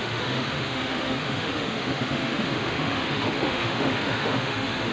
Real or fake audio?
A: fake